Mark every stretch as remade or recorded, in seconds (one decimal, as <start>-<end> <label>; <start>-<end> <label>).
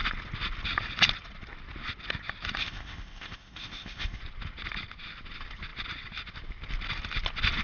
0.0-2.6 recorded; 2.6-4.2 remade; 4.2-7.6 recorded